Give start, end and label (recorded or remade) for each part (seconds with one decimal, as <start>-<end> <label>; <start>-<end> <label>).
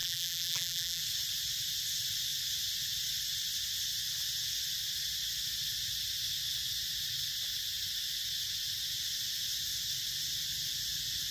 0.0-1.0 remade; 1.0-11.3 recorded